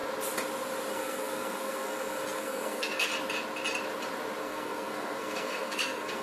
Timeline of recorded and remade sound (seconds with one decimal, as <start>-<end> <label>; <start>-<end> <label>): 0.0-0.9 recorded; 0.9-3.1 remade; 3.1-4.4 recorded; 4.4-6.2 remade